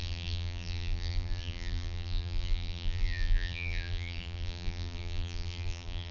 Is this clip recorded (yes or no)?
no